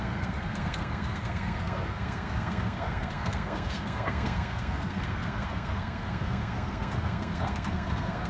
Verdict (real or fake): fake